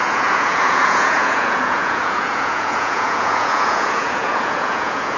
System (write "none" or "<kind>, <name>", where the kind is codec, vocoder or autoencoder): vocoder, Vocos